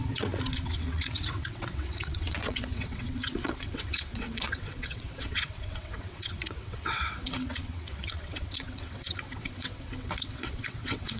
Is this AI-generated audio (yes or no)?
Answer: yes